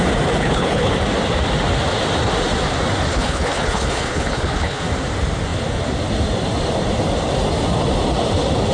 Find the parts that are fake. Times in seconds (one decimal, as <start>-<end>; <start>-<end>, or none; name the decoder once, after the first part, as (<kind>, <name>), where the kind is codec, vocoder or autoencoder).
0.4-0.9 (codec, HILCodec); 3.1-4.8